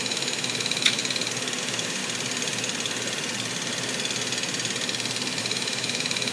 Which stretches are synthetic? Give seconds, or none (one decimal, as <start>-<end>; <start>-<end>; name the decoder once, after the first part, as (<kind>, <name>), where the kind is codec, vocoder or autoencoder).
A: 0.0-1.0 (autoencoder, DAC-VAE); 1.6-2.0; 5.4-6.3